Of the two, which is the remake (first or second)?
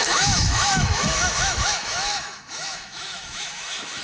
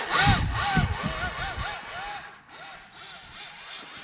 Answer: first